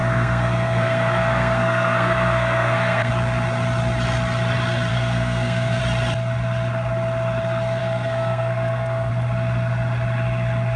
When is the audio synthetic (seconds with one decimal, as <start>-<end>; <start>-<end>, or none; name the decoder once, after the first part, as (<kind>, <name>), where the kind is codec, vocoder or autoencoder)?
0.0-3.1 (codec, SNAC); 4.9-5.8; 7.8-9.1